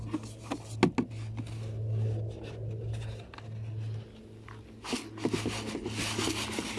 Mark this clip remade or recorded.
recorded